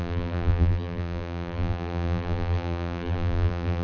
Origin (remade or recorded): remade